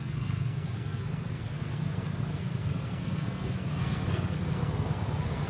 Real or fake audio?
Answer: fake